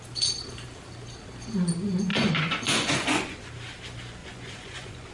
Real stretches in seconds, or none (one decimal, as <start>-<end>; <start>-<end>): 0.0-2.1; 3.5-4.2